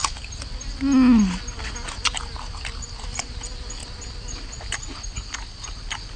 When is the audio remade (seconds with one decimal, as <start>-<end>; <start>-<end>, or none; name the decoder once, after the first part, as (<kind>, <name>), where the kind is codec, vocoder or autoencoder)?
none